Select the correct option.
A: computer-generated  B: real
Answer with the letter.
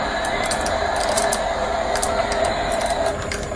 B